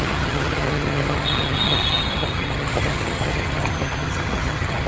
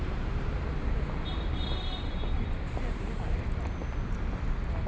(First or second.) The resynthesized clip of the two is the first